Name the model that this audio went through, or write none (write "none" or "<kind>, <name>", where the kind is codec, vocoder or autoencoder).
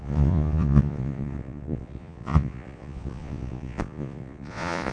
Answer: vocoder, Vocos